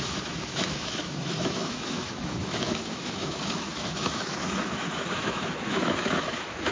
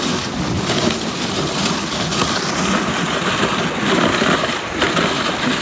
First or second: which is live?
second